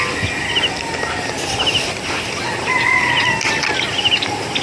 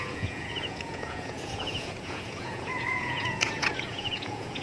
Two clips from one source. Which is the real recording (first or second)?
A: first